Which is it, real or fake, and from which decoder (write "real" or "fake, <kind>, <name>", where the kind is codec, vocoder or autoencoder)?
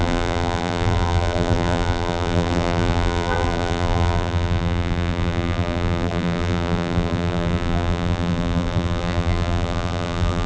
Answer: fake, vocoder, BigVGAN v2